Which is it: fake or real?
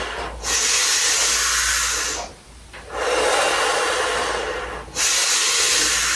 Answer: real